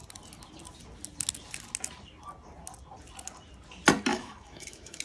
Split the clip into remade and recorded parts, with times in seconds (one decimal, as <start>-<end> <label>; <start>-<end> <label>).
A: 0.0-4.1 recorded; 4.1-5.0 remade